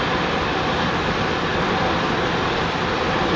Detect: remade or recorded recorded